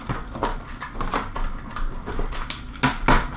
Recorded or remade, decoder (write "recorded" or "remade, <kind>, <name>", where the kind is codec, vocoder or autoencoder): recorded